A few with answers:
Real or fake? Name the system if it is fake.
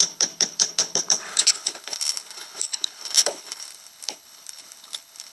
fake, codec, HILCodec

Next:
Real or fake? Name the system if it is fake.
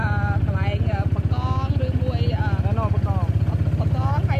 real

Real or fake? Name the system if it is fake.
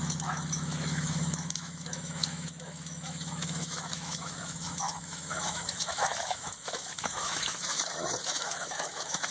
fake, autoencoder, DAC-VAE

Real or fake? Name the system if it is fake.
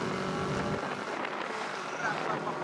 real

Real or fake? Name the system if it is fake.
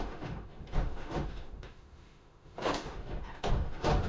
fake, autoencoder, DAC-VAE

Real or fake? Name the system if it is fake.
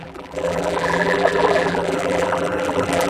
fake, vocoder, BigVGAN v2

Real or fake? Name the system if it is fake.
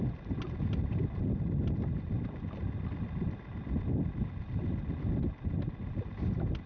real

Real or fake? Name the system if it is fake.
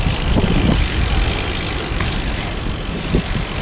real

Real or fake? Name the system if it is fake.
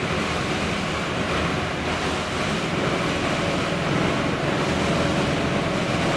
real